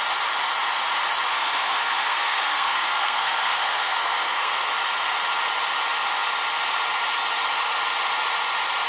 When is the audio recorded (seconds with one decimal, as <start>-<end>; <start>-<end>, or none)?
0.0-1.3; 4.7-8.9